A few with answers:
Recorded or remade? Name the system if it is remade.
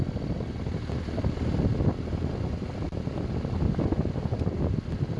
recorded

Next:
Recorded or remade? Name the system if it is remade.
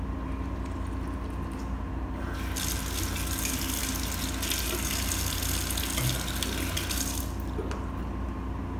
recorded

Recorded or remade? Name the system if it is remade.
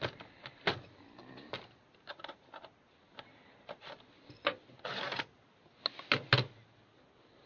recorded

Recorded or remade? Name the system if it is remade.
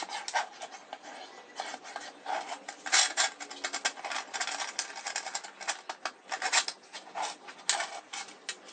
recorded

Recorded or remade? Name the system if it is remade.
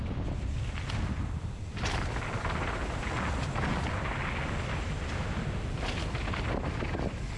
recorded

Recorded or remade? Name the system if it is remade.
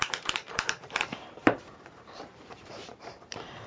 remade, vocoder, BigVGAN v2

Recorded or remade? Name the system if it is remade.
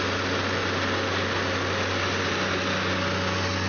recorded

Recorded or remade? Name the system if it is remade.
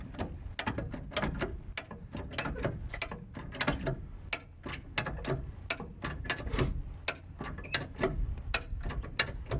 recorded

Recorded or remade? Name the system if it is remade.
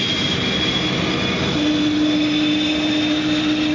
recorded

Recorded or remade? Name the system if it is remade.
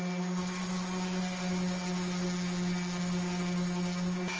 recorded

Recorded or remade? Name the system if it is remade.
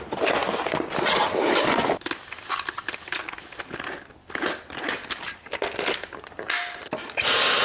recorded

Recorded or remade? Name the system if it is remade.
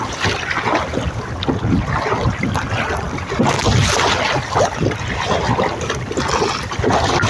recorded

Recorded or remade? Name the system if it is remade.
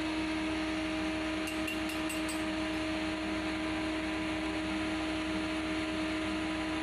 recorded